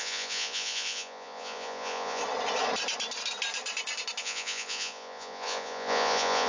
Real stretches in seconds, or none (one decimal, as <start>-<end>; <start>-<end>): 2.2-4.2